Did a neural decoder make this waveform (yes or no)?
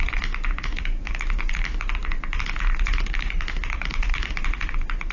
yes